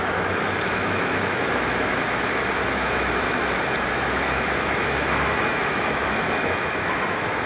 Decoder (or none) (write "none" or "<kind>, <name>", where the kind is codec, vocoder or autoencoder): autoencoder, DAC-VAE